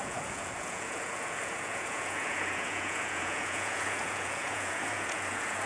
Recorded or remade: remade